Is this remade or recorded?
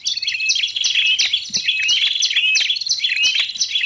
recorded